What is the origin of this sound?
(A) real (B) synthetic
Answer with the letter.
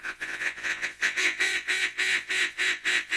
B